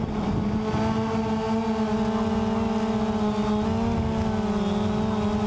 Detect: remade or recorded recorded